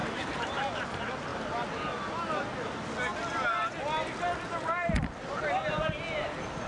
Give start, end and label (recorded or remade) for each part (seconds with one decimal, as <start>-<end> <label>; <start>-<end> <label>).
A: 0.0-0.6 remade; 0.6-6.7 recorded